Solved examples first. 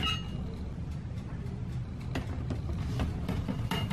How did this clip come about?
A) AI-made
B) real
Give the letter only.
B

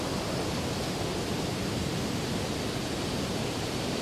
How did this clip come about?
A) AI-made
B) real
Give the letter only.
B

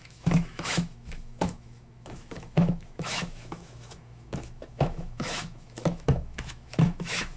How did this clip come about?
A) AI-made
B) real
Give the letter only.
A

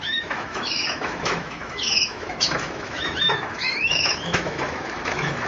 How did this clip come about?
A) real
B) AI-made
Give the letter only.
B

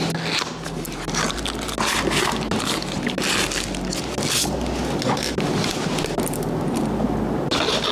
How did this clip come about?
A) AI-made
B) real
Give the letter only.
B